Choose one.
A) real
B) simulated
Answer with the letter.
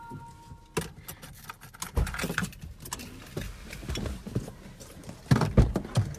A